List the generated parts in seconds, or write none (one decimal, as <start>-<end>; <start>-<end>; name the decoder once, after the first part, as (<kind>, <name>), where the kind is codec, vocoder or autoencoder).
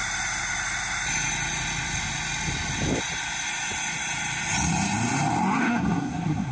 5.6-6.5 (codec, SNAC)